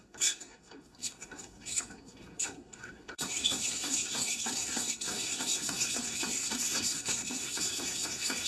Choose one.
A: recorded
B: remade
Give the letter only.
B